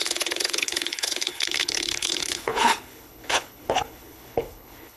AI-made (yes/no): yes